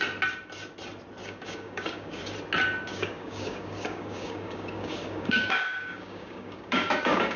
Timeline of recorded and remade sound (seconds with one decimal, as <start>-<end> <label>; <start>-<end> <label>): 0.0-1.2 recorded; 1.2-2.2 remade; 2.2-2.9 recorded; 2.9-7.4 remade